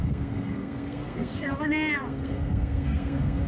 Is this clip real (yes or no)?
no